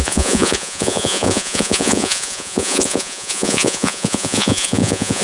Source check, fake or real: fake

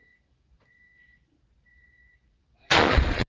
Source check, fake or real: fake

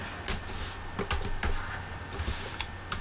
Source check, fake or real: real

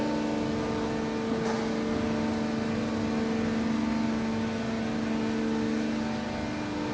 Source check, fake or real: real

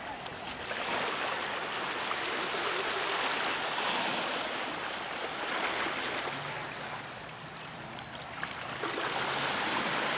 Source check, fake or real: real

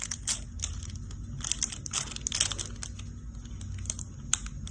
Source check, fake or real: real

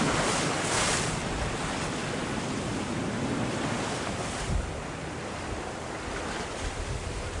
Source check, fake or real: real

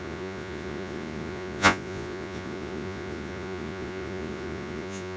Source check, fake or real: fake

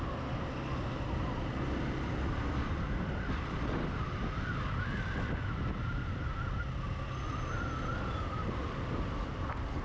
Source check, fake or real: real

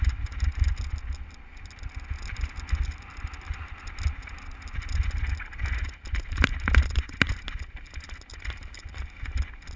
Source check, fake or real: real